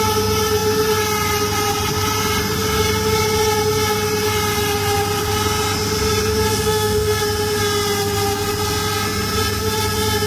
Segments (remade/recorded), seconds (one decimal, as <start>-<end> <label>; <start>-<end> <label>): 0.0-6.5 recorded; 6.5-7.2 remade; 7.2-10.3 recorded